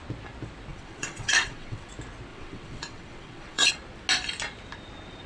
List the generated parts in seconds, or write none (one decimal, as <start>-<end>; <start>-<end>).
0.7-1.9; 2.3-3.7